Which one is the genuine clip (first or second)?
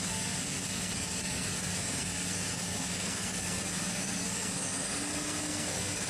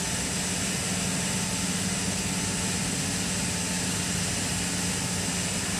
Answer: second